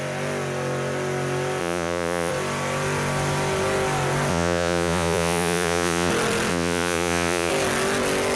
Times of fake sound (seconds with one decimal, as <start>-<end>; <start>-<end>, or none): 1.6-2.3; 4.3-6.1; 6.5-7.5

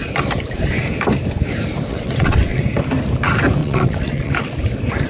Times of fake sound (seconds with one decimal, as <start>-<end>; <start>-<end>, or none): 1.9-2.6; 3.6-4.3

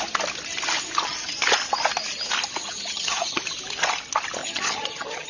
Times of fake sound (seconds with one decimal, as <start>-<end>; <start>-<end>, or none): 2.6-3.4; 4.4-5.3

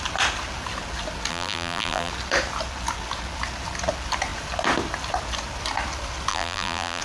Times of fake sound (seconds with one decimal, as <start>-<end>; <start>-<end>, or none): 1.3-2.1; 6.3-7.0

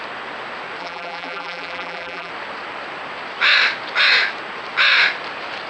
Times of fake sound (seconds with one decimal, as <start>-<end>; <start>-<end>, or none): 0.8-2.3